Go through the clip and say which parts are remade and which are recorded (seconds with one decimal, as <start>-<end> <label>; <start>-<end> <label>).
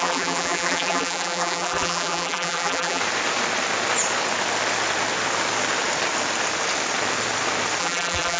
0.0-3.0 remade; 3.0-7.8 recorded; 7.8-8.4 remade